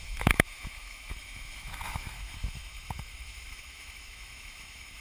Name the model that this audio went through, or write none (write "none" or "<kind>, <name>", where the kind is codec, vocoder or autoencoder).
autoencoder, DAC-VAE